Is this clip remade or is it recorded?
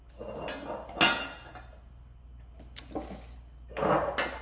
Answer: recorded